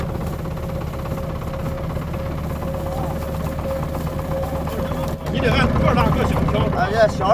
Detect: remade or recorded recorded